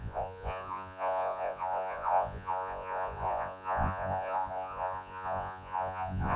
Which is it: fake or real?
fake